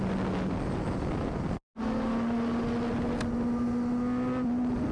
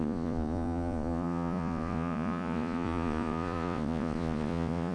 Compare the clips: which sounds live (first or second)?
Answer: first